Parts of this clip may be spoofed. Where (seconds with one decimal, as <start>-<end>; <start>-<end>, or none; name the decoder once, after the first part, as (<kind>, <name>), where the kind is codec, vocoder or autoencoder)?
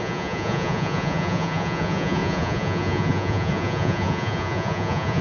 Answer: 0.0-5.2 (vocoder, Vocos)